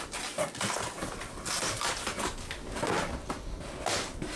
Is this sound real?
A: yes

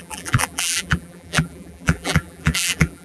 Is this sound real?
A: no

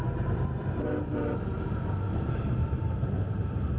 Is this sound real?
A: no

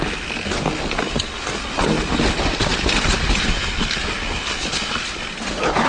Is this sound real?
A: yes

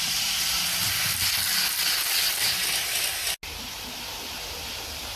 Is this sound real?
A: yes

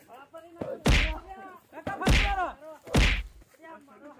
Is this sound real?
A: yes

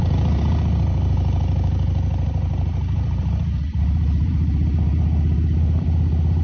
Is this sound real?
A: no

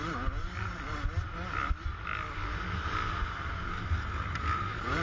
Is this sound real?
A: yes